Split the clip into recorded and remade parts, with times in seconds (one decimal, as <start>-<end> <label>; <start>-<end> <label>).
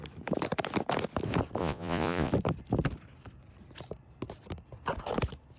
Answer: 0.0-1.6 recorded; 1.6-2.3 remade; 2.3-5.6 recorded